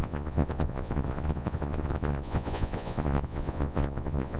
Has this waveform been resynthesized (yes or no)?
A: yes